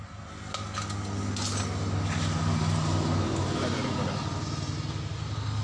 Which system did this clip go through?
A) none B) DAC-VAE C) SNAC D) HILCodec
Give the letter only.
A